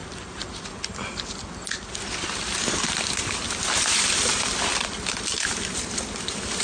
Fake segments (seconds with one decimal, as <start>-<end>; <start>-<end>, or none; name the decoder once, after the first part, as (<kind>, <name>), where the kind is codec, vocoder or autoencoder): 4.0-6.6 (vocoder, BigVGAN v2)